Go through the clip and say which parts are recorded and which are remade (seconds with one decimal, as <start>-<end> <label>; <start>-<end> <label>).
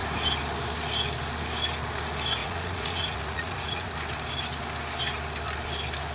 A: 0.0-2.4 recorded; 2.4-3.9 remade; 3.9-6.1 recorded